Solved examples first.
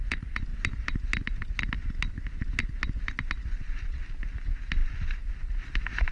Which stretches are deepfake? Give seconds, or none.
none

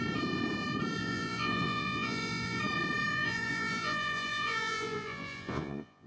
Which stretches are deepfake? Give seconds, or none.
1.0-2.6 (vocoder, Vocos); 3.1-6.1

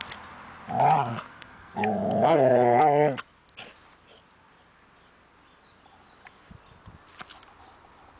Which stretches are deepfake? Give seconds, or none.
1.1-2.8 (codec, SNAC)